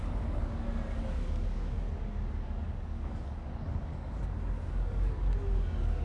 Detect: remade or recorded remade